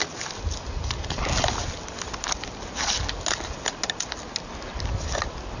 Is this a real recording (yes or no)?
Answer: yes